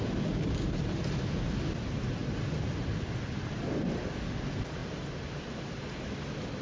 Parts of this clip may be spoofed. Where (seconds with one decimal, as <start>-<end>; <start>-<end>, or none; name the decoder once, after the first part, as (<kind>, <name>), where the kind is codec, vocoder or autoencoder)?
none